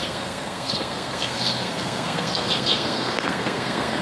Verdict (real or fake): fake